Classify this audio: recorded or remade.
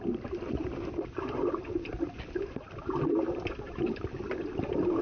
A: recorded